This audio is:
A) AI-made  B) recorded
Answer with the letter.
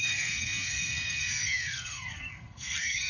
A